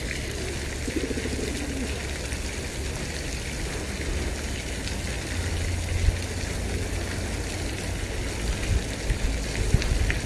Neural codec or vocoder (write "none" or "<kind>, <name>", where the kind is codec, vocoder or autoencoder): none